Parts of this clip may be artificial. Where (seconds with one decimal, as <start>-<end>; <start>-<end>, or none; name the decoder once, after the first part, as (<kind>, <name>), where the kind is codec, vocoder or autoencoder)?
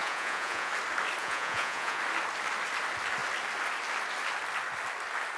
0.0-0.7 (vocoder, Vocos); 1.2-2.0